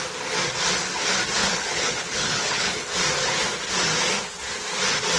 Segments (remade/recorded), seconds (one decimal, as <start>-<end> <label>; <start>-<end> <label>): 0.0-1.4 recorded; 1.4-2.9 remade; 2.9-5.2 recorded